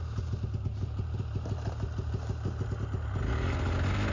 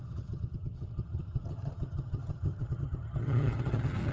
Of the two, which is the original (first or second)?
first